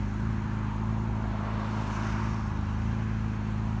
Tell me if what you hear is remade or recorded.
recorded